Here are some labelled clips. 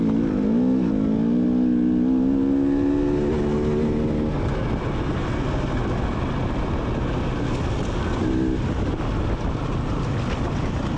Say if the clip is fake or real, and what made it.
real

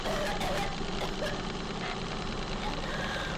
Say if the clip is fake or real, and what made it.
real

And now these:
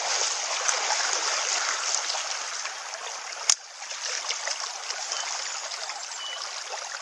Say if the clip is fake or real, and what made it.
real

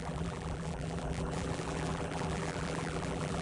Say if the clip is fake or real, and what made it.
fake, vocoder, BigVGAN v2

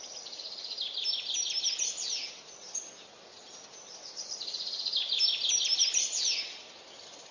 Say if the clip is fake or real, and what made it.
real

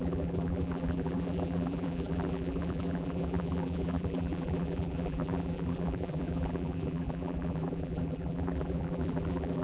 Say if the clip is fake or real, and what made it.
fake, vocoder, BigVGAN v2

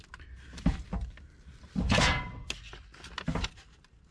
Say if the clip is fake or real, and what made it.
real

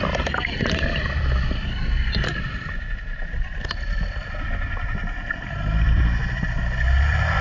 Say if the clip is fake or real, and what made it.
fake, vocoder, BigVGAN v2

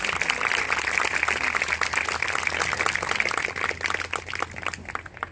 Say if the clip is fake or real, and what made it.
real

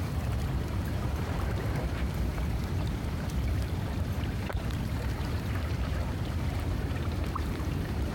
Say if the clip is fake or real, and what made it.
fake, vocoder, BigVGAN v2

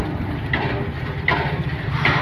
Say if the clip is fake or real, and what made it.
fake, vocoder, BigVGAN v2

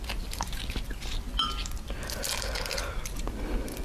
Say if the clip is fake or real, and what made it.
real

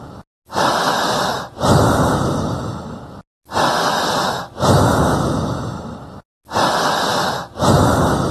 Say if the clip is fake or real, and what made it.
real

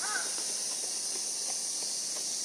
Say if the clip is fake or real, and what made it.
real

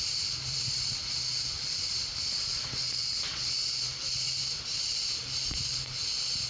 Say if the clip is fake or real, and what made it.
fake, vocoder, BigVGAN v2